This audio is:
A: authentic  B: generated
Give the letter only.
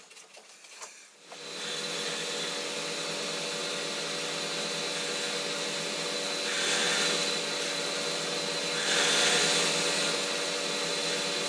A